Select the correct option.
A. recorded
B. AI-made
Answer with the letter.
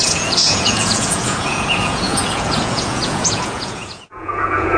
B